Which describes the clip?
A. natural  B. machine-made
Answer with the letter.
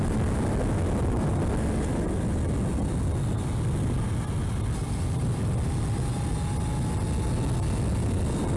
A